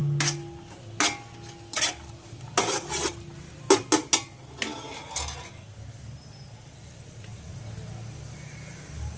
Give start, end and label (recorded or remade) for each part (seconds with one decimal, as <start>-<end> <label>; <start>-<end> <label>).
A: 0.0-9.2 recorded